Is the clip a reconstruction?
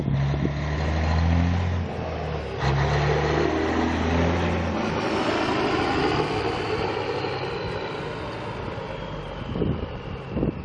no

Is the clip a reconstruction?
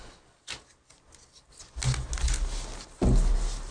no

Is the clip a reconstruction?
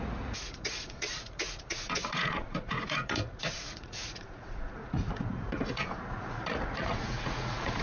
yes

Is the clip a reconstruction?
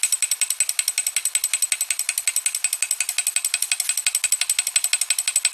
no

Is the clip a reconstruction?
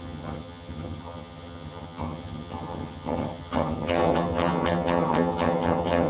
yes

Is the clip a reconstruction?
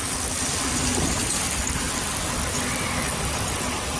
no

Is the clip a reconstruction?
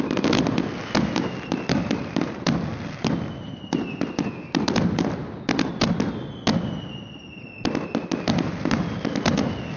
no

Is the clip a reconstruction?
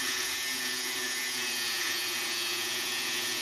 yes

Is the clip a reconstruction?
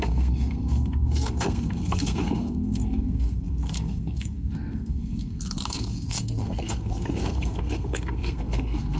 yes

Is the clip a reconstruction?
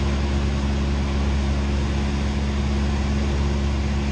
no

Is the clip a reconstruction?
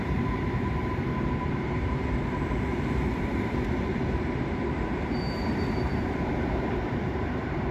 yes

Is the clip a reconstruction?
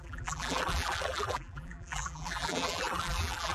yes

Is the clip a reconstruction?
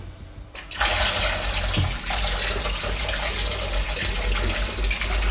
no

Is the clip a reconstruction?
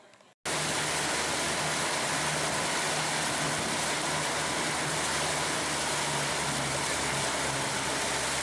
no